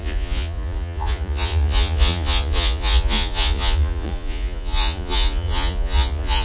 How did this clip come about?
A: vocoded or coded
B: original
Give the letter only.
A